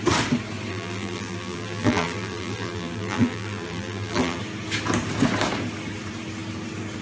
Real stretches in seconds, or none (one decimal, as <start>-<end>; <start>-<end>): 0.0-0.7; 4.4-7.0